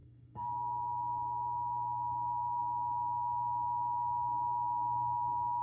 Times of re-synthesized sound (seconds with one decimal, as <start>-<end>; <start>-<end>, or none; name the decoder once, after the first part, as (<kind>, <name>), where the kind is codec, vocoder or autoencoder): 0.0-2.6 (codec, DAC)